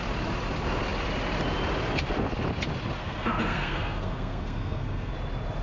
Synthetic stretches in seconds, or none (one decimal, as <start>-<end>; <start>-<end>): 3.0-5.1